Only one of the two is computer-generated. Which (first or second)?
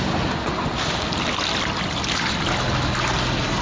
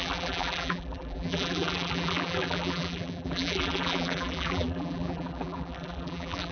second